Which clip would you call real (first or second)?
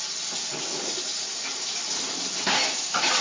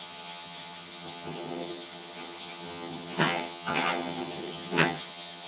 first